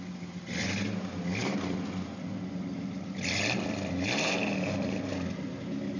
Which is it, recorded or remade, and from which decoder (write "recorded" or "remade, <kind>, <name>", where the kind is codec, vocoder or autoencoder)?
recorded